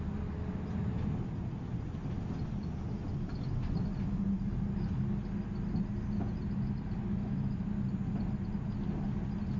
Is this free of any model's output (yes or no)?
yes